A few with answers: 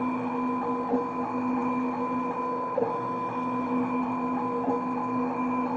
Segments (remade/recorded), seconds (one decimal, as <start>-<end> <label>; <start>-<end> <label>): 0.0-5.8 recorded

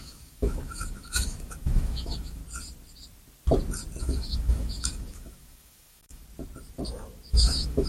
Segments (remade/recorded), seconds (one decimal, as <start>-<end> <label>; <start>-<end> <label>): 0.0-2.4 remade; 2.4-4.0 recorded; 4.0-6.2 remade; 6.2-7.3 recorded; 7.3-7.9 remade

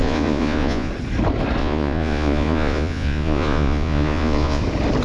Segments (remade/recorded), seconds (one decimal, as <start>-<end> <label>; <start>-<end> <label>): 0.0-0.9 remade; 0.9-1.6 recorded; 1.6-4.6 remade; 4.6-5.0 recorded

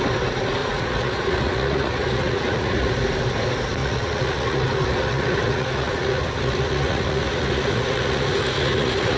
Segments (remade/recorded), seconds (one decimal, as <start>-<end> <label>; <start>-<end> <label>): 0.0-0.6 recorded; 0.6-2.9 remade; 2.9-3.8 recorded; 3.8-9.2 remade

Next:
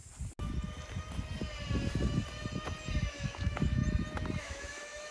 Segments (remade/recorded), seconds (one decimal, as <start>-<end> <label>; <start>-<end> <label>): 0.0-3.1 recorded; 3.1-3.8 remade; 3.8-4.4 recorded; 4.4-5.1 remade